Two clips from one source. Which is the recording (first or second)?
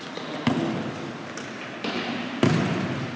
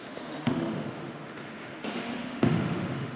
first